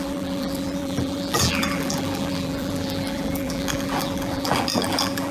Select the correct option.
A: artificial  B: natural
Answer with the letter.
A